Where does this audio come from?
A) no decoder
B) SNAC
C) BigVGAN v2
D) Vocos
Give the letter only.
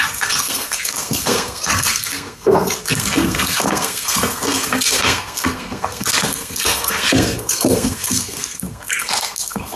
B